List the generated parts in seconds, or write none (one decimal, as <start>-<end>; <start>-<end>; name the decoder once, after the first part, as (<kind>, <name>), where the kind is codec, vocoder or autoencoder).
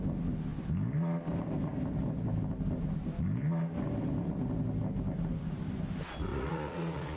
6.3-7.2 (vocoder, Vocos)